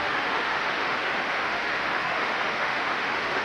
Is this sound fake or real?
fake